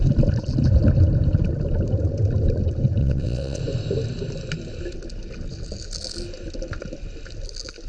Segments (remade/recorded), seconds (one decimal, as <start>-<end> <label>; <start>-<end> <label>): 0.0-3.0 recorded; 3.0-3.6 remade; 3.6-7.9 recorded